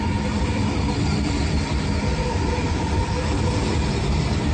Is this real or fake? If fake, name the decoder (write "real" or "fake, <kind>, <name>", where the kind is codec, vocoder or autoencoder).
fake, vocoder, BigVGAN v2